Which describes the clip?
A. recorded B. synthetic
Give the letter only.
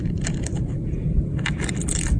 A